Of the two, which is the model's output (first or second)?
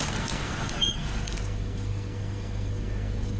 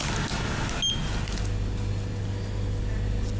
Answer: first